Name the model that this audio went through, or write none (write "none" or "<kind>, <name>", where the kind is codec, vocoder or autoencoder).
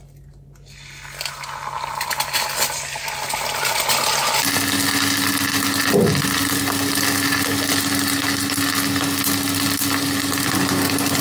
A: none